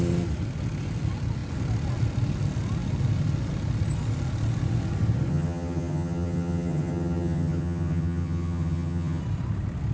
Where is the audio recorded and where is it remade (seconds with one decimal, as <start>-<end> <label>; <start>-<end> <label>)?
0.0-5.3 recorded; 5.3-9.2 remade; 9.2-9.9 recorded